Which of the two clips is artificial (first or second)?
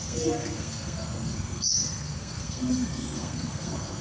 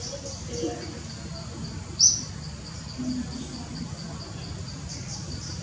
first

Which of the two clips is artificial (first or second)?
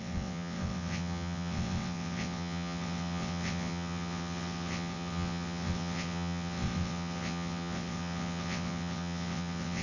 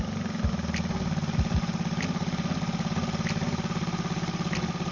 first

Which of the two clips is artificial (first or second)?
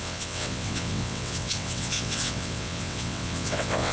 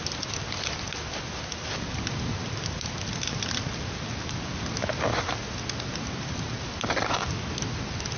first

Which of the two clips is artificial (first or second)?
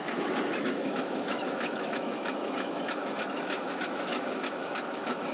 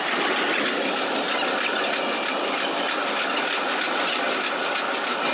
first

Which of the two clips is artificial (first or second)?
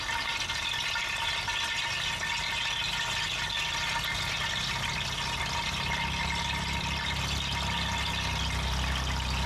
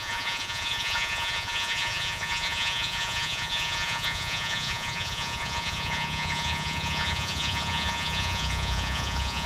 second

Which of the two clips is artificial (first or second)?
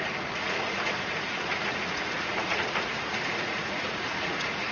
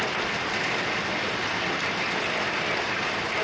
first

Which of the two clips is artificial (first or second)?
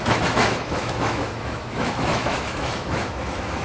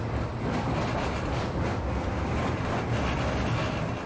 first